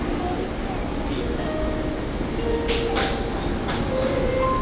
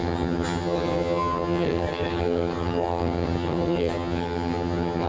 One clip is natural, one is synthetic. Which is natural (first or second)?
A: first